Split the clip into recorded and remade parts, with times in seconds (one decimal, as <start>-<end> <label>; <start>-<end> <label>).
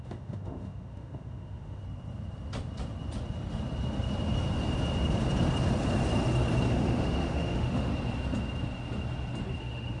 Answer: 0.0-1.8 remade; 1.8-6.7 recorded; 6.7-7.9 remade; 7.9-9.6 recorded; 9.6-10.0 remade